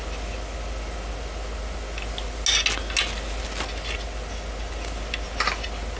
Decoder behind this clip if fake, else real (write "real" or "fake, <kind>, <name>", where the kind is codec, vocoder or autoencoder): real